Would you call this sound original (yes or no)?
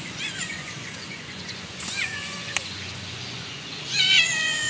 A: no